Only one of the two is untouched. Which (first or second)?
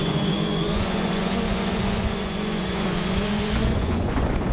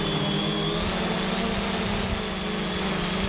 second